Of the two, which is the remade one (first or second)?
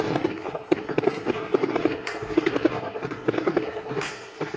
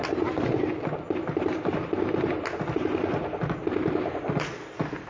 first